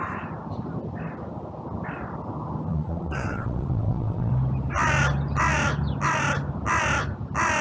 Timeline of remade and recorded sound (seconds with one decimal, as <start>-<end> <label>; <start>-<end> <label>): 0.0-2.7 recorded; 2.7-4.3 remade; 4.3-7.6 recorded